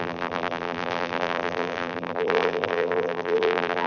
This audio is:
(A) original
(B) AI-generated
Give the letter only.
B